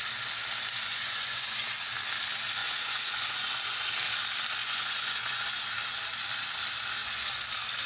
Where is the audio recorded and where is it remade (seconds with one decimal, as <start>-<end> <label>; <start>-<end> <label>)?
0.0-0.9 recorded; 0.9-1.7 remade; 1.7-2.6 recorded; 2.6-3.9 remade; 3.9-4.6 recorded; 4.6-5.7 remade; 5.7-7.0 recorded; 7.0-7.5 remade; 7.5-7.9 recorded